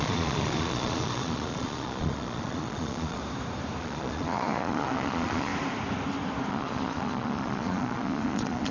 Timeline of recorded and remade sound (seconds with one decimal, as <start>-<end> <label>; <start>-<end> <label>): 0.0-3.2 remade; 3.2-3.8 recorded; 3.8-5.5 remade; 5.5-6.5 recorded; 6.5-8.7 remade